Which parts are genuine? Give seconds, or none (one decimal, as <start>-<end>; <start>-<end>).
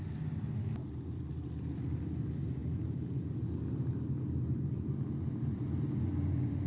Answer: 0.0-6.7